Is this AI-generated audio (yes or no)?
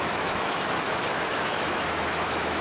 yes